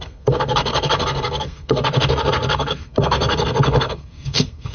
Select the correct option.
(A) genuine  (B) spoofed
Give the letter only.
B